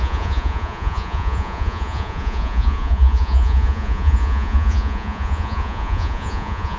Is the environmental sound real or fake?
fake